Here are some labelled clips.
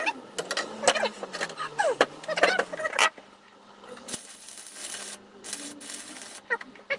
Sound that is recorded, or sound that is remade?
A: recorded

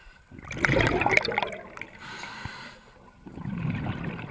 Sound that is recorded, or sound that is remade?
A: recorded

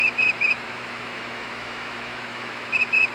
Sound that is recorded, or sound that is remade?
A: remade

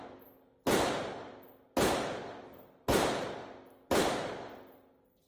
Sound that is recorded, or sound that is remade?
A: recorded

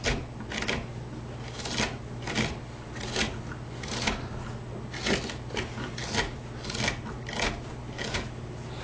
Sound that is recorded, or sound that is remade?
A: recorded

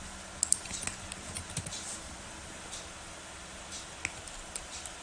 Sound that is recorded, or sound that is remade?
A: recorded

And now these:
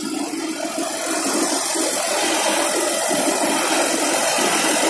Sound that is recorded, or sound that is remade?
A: recorded